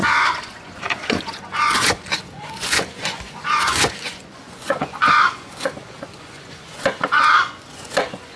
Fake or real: fake